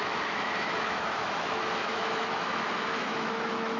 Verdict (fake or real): fake